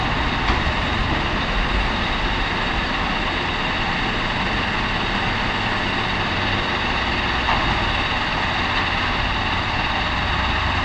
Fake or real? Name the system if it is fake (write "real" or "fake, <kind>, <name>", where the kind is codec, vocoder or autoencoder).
real